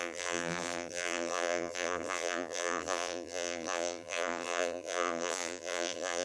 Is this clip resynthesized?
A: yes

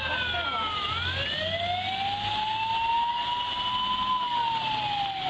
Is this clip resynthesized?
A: no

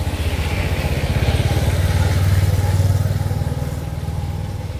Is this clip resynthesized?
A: no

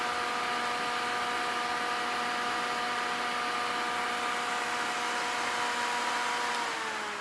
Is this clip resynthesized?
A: no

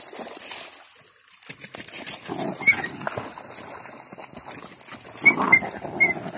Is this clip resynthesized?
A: no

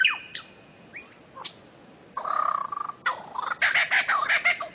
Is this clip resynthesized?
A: no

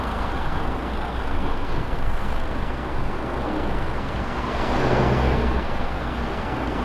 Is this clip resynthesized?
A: yes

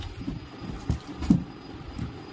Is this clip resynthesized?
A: no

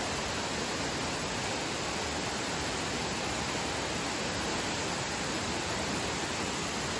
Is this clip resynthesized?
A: no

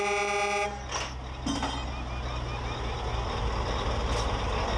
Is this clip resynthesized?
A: no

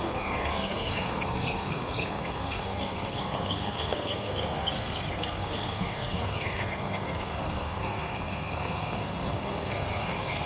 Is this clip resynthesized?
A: yes